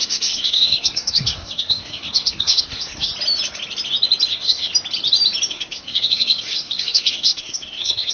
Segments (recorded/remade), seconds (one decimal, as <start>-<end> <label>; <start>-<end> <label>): 0.0-3.1 remade; 3.1-4.3 recorded; 4.3-4.7 remade; 4.7-5.5 recorded; 5.5-8.1 remade